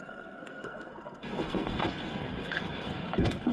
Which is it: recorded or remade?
remade